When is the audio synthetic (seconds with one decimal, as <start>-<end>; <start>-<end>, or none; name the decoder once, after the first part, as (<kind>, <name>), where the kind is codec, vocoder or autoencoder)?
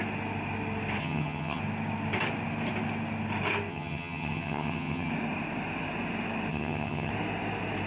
1.0-1.6 (vocoder, HiFi-GAN); 3.7-5.1; 6.5-7.1